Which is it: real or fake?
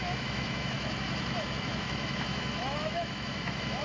fake